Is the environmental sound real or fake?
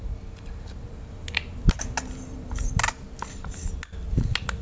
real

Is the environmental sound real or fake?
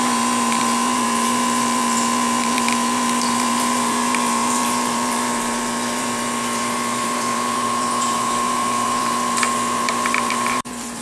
fake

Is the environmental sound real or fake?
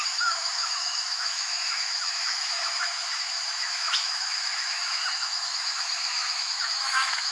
fake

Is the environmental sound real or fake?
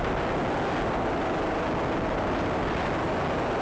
real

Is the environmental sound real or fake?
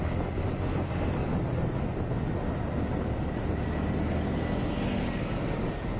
real